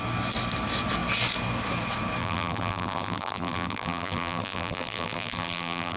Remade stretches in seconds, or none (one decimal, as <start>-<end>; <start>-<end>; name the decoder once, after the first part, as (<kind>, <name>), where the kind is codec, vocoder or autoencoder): 2.2-6.0 (vocoder, BigVGAN v2)